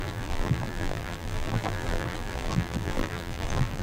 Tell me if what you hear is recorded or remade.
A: remade